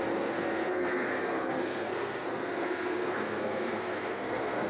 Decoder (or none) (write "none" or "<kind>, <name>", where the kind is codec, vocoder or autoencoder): codec, SNAC